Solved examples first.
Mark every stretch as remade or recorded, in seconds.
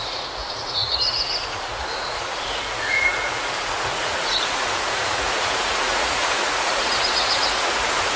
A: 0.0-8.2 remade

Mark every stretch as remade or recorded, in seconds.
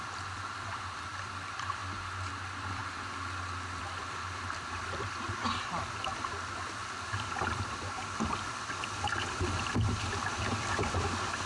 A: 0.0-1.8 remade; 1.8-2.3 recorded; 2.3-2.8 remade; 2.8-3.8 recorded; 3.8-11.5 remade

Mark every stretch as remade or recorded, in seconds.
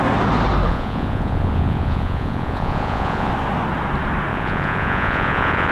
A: 0.0-0.7 recorded; 0.7-3.3 remade; 3.3-4.3 recorded; 4.3-5.7 remade